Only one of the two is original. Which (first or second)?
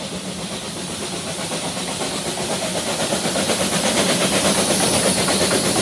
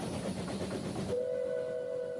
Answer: second